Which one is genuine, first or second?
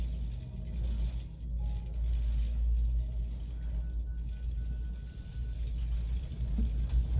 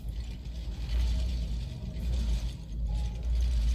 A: first